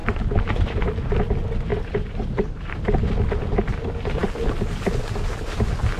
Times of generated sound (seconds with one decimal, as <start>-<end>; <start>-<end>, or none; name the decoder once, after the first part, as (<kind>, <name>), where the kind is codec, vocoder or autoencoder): 0.0-1.2 (vocoder, BigVGAN v2); 1.7-2.7